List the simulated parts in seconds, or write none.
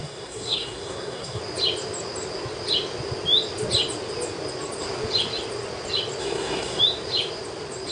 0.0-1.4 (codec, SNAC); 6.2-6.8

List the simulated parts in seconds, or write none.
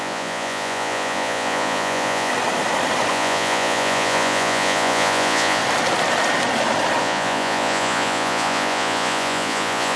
0.0-2.3 (vocoder, Vocos); 3.1-5.6; 7.0-10.0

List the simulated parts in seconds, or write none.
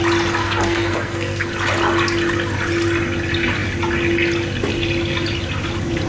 0.4-1.5 (codec, SNAC)